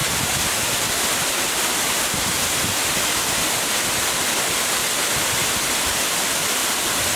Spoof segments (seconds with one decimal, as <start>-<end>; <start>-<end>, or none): 2.6-4.8; 5.8-7.2